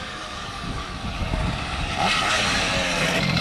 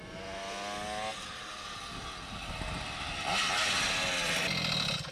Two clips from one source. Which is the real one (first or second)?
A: second